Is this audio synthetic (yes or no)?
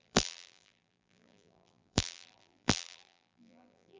yes